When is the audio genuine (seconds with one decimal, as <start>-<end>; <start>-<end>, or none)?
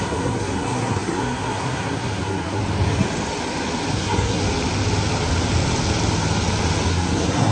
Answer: 2.6-3.9; 4.4-6.9